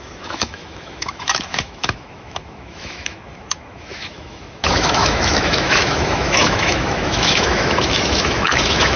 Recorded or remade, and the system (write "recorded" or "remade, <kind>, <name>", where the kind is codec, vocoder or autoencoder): remade, autoencoder, DAC-VAE